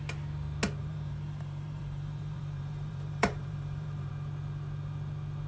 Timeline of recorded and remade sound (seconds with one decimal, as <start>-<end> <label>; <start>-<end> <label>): 0.0-0.8 recorded; 0.8-4.1 remade; 4.1-5.5 recorded